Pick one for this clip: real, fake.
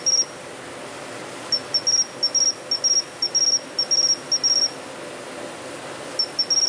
real